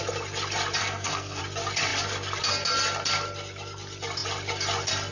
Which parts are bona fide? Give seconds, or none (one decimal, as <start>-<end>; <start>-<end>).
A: 0.0-0.8; 1.4-5.1